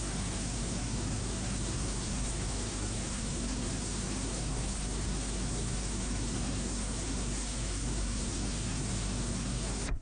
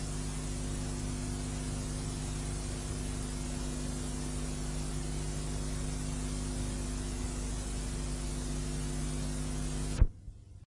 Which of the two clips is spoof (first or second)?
first